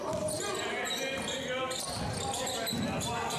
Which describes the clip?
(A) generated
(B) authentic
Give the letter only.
B